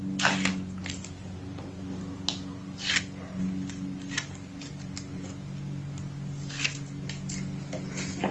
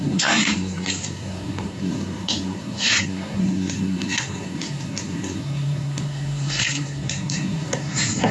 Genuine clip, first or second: first